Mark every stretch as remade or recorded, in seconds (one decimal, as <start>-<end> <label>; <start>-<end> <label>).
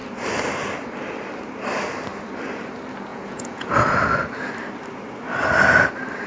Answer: 0.0-3.1 recorded; 3.1-3.7 remade; 3.7-6.3 recorded